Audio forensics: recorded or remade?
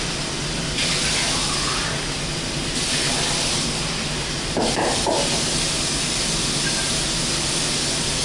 recorded